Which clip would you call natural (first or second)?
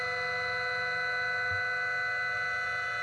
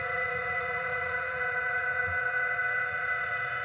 first